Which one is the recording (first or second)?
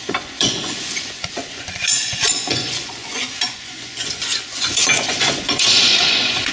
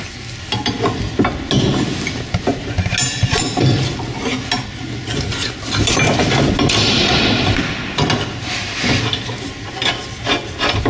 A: second